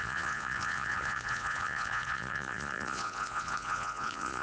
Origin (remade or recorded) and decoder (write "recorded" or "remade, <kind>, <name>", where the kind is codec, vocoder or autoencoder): remade, vocoder, Vocos